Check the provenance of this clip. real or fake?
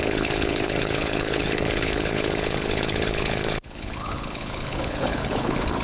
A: fake